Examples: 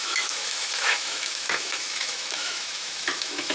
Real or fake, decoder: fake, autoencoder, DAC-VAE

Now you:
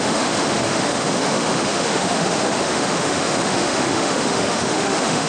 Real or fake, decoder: fake, autoencoder, DAC-VAE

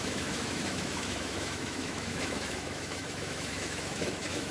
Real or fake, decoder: fake, autoencoder, DAC-VAE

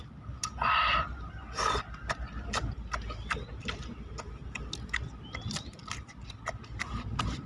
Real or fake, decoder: real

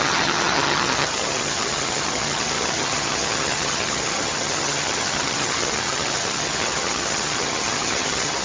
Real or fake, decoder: fake, vocoder, HiFi-GAN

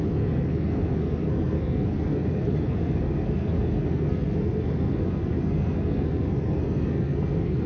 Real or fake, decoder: fake, codec, SNAC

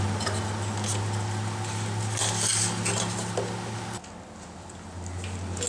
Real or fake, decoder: real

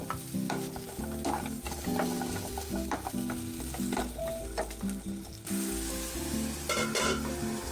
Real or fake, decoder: real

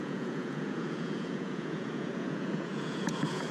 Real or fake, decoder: fake, vocoder, Vocos